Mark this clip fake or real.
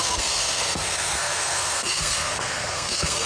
fake